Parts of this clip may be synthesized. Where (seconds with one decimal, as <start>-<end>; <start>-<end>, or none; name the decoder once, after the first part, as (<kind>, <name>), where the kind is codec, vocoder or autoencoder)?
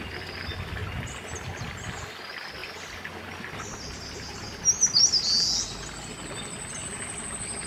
none